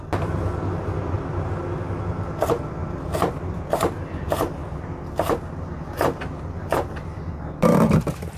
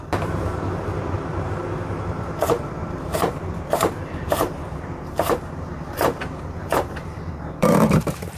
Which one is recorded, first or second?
first